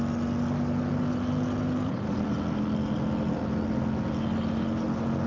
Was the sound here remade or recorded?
recorded